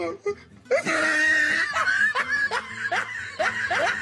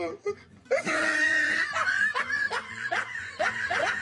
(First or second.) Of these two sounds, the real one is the first